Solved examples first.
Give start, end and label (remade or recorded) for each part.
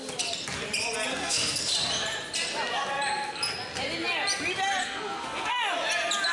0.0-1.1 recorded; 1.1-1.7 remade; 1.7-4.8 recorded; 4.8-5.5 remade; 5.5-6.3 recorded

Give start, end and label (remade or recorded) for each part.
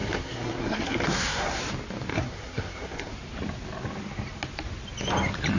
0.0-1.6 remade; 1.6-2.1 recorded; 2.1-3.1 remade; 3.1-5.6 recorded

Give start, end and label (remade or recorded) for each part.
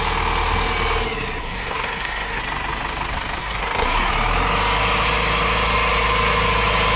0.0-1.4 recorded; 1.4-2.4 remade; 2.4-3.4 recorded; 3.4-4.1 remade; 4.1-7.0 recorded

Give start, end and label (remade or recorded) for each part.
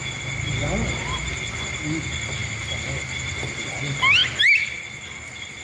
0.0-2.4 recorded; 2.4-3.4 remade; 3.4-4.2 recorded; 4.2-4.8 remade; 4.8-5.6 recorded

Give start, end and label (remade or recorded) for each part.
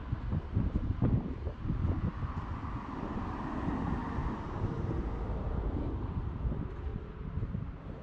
0.0-4.0 recorded; 4.0-5.7 remade; 5.7-6.9 recorded; 6.9-8.0 remade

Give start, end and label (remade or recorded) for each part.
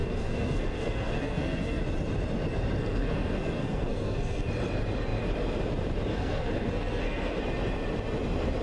0.0-1.8 remade; 1.8-2.8 recorded; 2.8-4.5 remade; 4.5-6.1 recorded; 6.1-7.4 remade; 7.4-8.6 recorded